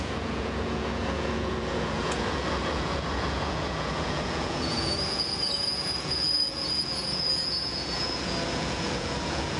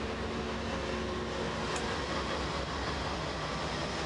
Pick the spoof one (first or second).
first